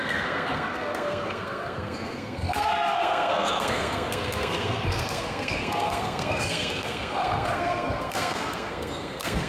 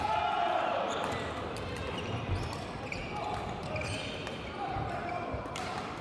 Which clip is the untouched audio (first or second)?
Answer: second